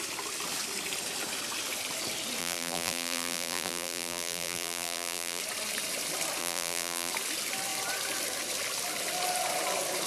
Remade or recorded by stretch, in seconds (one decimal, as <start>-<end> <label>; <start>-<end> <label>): 0.0-2.4 recorded; 2.4-5.4 remade; 5.4-6.4 recorded; 6.4-7.1 remade; 7.1-10.1 recorded

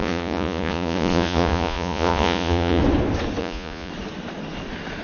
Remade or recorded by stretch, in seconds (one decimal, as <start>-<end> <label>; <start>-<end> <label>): 0.0-2.8 remade; 2.8-3.4 recorded; 3.4-3.9 remade; 3.9-5.0 recorded

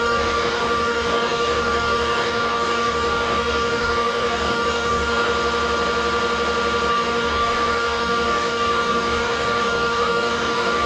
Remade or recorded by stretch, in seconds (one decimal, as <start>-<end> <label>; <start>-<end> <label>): 0.0-5.3 remade; 5.3-6.9 recorded; 6.9-10.9 remade

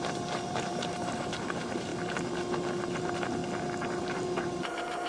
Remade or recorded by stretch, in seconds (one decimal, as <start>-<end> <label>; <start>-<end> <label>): 0.0-1.9 remade; 1.9-3.0 recorded; 3.0-3.4 remade; 3.4-4.0 recorded; 4.0-5.1 remade

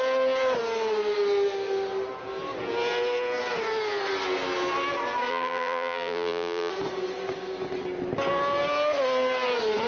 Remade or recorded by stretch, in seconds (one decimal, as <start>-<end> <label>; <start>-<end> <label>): 0.0-5.3 recorded; 5.3-6.7 remade; 6.7-9.9 recorded

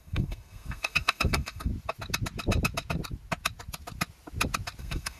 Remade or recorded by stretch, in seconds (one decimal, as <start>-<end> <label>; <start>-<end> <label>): 0.0-1.7 remade; 1.7-4.8 recorded; 4.8-5.2 remade